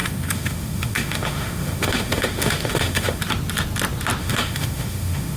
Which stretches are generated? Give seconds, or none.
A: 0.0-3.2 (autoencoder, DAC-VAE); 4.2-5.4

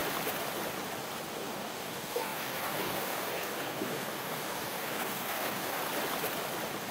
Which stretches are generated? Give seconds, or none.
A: 1.4-5.8 (codec, DAC)

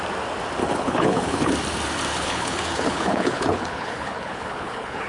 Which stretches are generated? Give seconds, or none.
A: 0.6-1.5 (codec, HILCodec); 2.1-5.1

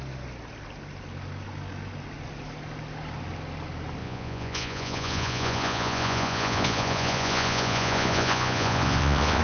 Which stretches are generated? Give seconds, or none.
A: 4.0-9.4 (vocoder, Vocos)

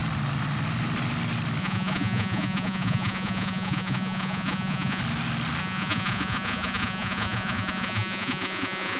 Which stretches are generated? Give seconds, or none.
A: 1.6-5.0 (vocoder, Vocos); 5.6-9.0

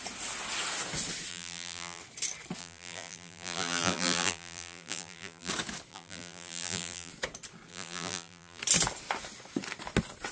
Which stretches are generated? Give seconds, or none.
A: 1.3-2.0 (vocoder, BigVGAN v2); 2.6-5.5; 5.9-7.1; 7.7-8.6

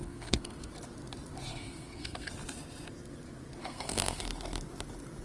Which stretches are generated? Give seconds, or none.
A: 0.0-0.7 (codec, SNAC); 1.5-2.3; 3.6-4.2

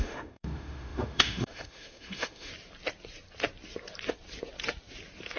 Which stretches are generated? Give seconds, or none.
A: 0.0-2.5 (autoencoder, DAC-VAE)